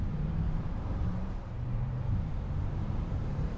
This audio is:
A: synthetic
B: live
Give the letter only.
A